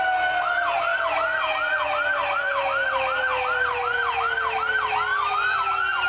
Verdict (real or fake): real